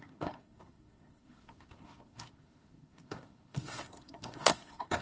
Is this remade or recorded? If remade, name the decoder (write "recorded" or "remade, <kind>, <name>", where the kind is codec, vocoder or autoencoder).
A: remade, codec, SNAC